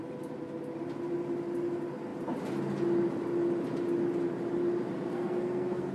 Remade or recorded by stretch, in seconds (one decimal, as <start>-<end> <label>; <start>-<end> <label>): 0.0-5.1 recorded; 5.1-5.9 remade